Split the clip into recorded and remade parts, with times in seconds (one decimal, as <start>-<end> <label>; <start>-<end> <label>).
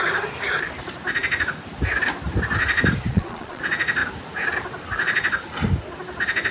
0.0-3.1 recorded; 3.1-3.6 remade; 3.6-6.5 recorded